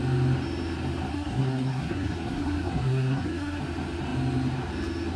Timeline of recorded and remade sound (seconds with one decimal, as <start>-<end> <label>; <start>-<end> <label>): 0.0-1.1 recorded; 1.1-3.6 remade; 3.6-5.2 recorded